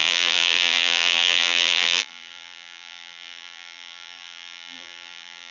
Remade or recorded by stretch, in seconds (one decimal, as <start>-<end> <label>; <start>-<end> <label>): 0.0-5.5 remade